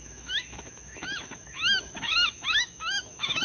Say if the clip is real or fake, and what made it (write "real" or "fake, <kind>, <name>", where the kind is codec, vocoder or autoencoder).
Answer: fake, autoencoder, DAC-VAE